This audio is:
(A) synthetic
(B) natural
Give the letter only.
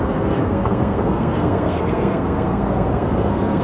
A